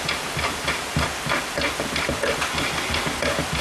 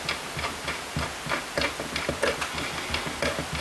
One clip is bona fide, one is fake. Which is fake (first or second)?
first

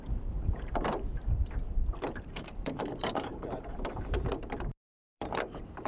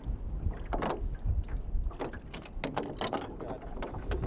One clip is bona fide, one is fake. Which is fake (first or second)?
first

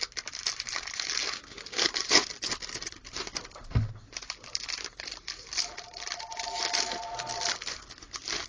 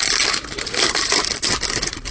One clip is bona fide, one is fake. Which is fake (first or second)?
second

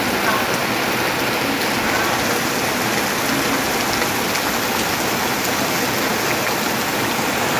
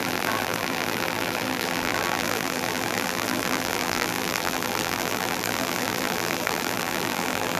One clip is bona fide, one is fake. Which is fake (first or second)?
second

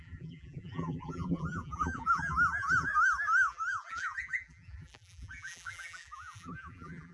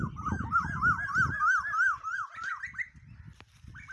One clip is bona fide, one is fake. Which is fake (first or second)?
first